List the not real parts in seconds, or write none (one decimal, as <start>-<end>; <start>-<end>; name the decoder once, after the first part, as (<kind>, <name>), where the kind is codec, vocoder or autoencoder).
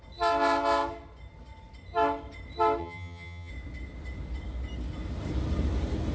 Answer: 2.8-3.5 (vocoder, HiFi-GAN)